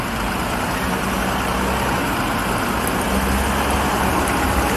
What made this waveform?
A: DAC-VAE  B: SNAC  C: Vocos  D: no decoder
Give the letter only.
D